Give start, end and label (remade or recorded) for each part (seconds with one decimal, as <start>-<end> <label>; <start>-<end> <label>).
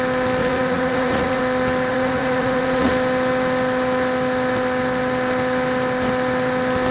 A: 0.0-0.4 recorded; 0.4-1.4 remade; 1.4-1.9 recorded; 1.9-2.9 remade; 2.9-6.9 recorded